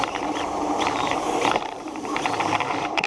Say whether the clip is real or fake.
fake